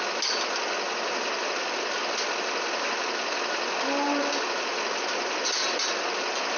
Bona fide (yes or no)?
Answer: yes